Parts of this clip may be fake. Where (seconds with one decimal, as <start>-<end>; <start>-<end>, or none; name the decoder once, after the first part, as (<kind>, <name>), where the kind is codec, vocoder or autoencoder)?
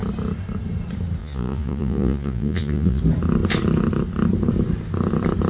1.2-3.0 (vocoder, Vocos)